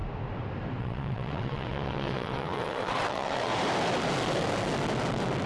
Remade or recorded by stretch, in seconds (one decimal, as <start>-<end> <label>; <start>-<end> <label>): 0.0-0.8 recorded; 0.8-3.5 remade; 3.5-5.5 recorded